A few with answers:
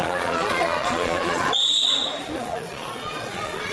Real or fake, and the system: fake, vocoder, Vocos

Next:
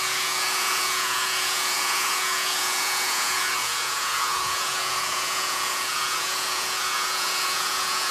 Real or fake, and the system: fake, vocoder, Vocos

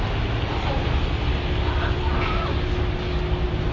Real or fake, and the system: real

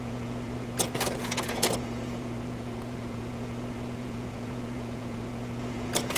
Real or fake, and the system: fake, vocoder, Vocos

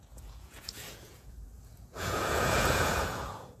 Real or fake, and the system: fake, vocoder, Vocos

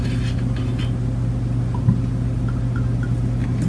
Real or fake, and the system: real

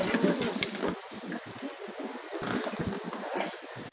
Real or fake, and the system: real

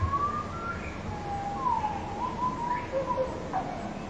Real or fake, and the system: real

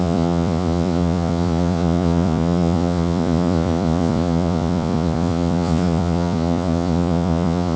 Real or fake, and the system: fake, vocoder, Vocos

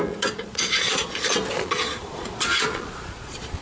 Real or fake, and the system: fake, vocoder, Vocos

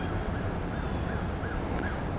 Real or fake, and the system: real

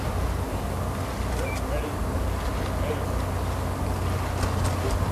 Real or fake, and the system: real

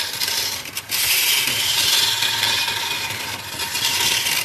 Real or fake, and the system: real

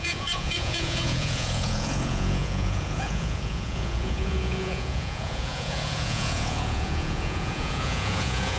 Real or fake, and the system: fake, vocoder, Vocos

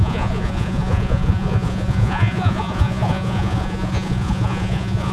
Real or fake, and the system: fake, vocoder, Vocos